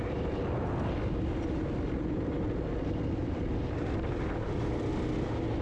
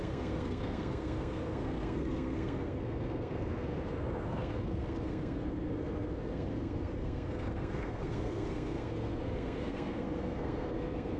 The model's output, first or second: second